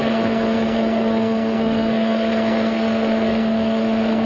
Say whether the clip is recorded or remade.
remade